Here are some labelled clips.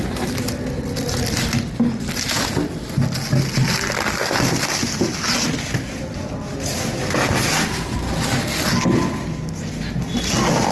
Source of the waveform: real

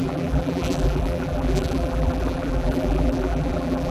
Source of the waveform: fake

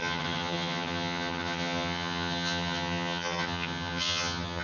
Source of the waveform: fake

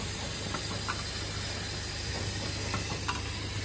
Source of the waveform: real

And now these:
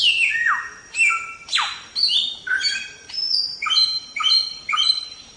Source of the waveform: real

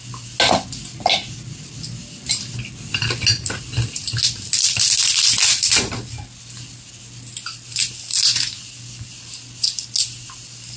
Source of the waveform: real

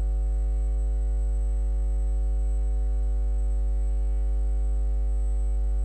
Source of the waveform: fake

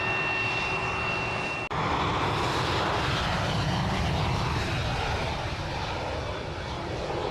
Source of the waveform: real